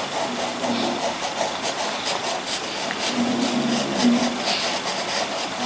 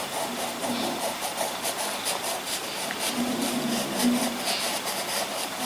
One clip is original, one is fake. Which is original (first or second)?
first